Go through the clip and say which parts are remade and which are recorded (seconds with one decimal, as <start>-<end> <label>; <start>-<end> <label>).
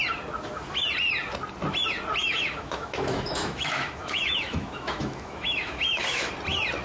0.0-2.2 recorded; 2.2-6.3 remade; 6.3-6.8 recorded